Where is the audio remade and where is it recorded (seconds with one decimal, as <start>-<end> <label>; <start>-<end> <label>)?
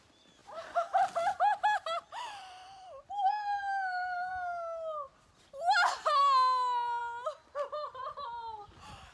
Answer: 0.0-3.2 recorded; 3.2-4.3 remade; 4.3-9.1 recorded